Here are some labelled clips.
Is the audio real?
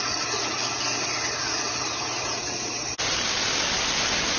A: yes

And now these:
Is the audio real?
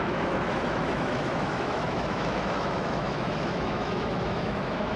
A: no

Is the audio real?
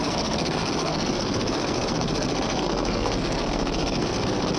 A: no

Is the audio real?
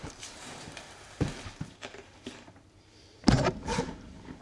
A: no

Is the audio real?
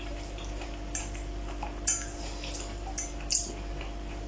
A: yes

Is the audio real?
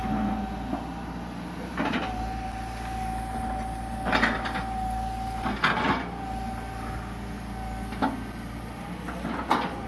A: yes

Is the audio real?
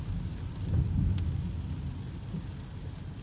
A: yes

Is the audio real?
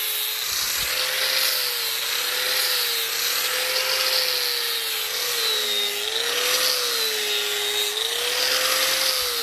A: yes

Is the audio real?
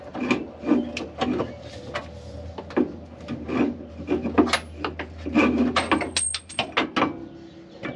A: yes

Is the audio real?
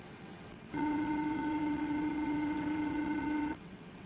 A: no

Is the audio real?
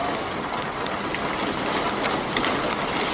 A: yes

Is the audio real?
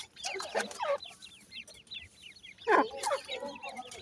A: yes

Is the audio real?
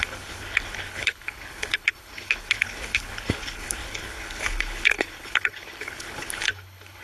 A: no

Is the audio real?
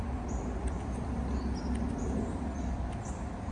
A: yes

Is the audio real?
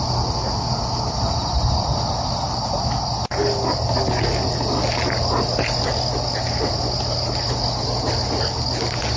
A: yes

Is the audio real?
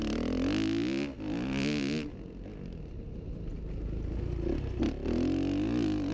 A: yes